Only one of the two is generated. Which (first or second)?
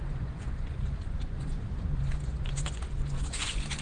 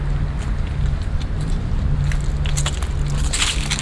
first